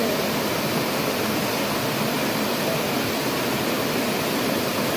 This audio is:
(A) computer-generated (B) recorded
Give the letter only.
B